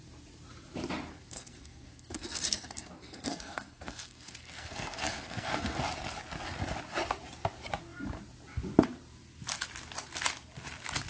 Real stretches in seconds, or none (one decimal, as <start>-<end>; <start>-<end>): 0.0-1.1; 5.8-11.1